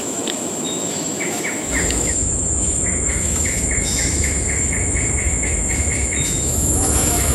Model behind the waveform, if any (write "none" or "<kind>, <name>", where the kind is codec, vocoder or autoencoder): autoencoder, DAC-VAE